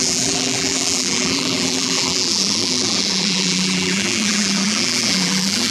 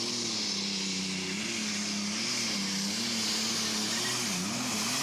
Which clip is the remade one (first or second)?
first